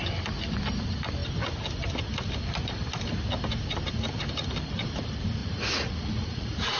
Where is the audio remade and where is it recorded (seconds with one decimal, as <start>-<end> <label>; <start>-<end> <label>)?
0.0-5.4 recorded; 5.4-6.8 remade